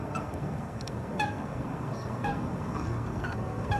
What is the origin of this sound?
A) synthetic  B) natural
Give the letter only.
A